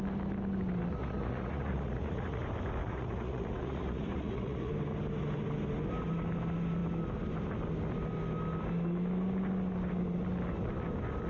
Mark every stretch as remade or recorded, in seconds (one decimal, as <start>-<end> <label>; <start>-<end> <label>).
0.0-1.0 recorded; 1.0-2.4 remade; 2.4-2.8 recorded; 2.8-4.7 remade; 4.7-11.3 recorded